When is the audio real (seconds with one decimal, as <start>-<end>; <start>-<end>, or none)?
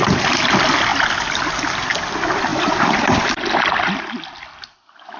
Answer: 0.0-2.5; 3.9-5.2